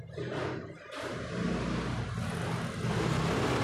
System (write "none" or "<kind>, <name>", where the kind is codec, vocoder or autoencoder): none